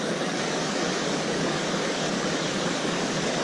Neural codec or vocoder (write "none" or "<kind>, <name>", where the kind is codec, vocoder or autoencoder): codec, DAC